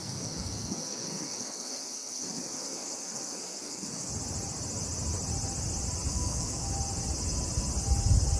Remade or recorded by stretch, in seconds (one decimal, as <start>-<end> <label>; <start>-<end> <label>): 0.0-4.1 remade; 4.1-6.1 recorded; 6.1-6.7 remade; 6.7-8.4 recorded

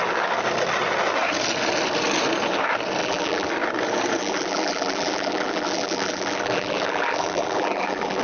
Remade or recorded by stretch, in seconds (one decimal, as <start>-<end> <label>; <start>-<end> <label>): 0.0-3.0 recorded; 3.0-3.5 remade; 3.5-4.2 recorded; 4.2-8.2 remade

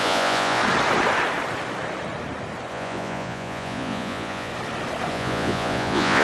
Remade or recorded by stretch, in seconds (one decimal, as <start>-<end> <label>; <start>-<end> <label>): 0.0-0.6 remade; 0.6-2.7 recorded; 2.7-4.5 remade; 4.5-5.1 recorded; 5.1-6.2 remade

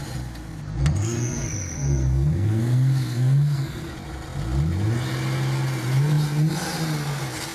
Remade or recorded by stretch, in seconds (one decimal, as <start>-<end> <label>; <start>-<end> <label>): 0.0-0.8 recorded; 0.8-3.9 remade; 3.9-7.5 recorded

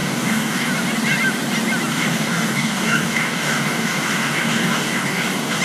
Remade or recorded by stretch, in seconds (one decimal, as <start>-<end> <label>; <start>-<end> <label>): 0.0-0.7 remade; 0.7-1.9 recorded; 1.9-5.6 remade

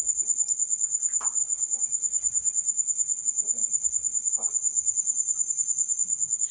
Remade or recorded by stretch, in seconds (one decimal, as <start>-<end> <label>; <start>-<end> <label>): 0.0-6.5 recorded